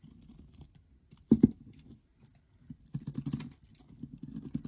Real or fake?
real